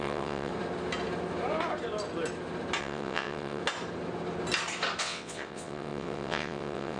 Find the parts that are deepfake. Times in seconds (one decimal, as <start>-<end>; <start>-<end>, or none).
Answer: 0.0-0.5; 2.8-3.6; 5.0-7.0